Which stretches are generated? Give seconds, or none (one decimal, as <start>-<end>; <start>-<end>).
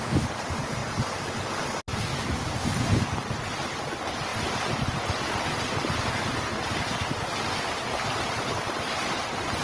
4.3-9.6